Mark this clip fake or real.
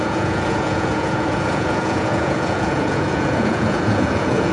fake